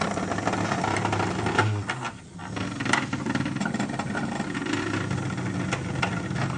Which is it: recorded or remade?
recorded